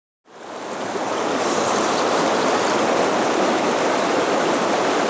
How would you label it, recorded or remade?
recorded